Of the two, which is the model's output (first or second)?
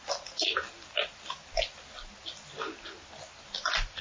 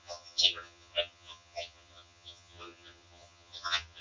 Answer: second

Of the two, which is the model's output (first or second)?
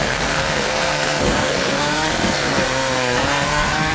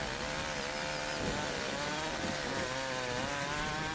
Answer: first